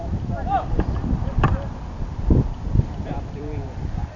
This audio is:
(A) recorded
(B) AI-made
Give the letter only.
B